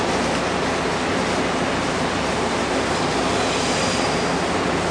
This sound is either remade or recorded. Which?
recorded